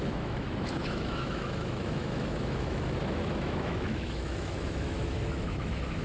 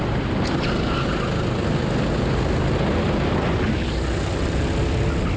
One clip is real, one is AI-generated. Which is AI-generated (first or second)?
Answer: first